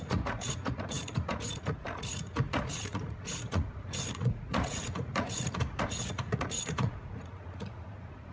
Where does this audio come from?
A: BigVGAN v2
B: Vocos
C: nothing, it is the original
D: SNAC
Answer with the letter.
B